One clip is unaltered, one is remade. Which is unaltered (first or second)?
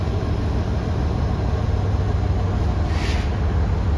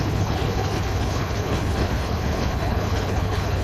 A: first